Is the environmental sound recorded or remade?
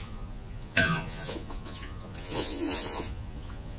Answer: remade